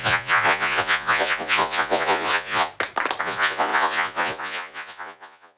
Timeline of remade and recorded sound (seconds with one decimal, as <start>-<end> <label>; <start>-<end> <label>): 0.0-2.7 remade; 2.7-3.2 recorded; 3.2-5.6 remade